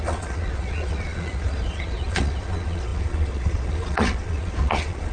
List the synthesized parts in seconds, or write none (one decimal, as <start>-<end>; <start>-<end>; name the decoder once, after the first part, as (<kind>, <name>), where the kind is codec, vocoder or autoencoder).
0.0-5.1 (vocoder, Vocos)